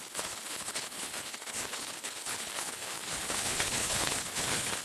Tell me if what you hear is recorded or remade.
remade